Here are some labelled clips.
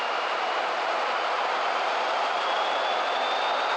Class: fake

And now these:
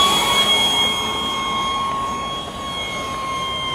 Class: real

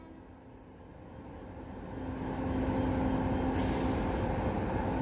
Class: real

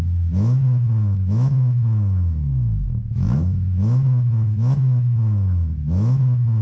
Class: fake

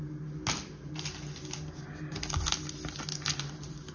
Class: real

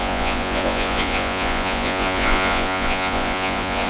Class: fake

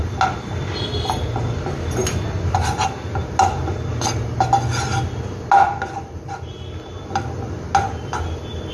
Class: real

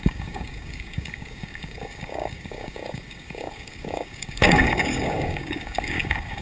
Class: fake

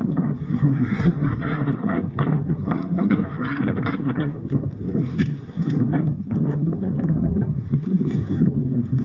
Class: fake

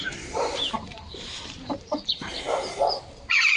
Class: fake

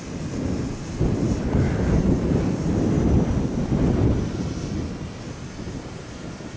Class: real